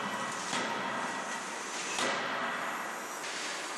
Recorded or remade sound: recorded